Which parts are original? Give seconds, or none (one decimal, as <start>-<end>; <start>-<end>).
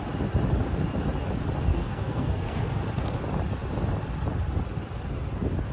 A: 0.0-1.7; 2.8-5.7